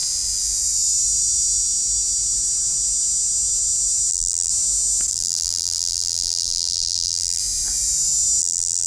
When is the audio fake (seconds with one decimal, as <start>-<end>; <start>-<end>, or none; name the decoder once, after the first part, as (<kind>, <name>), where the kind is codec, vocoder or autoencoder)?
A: 4.1-4.5 (vocoder, BigVGAN v2); 5.1-7.4; 8.4-8.9